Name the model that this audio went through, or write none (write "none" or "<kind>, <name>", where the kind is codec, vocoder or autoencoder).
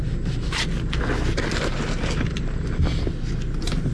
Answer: none